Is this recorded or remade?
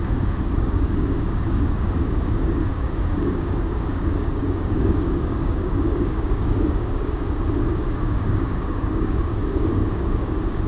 remade